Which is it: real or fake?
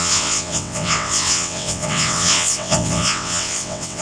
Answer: fake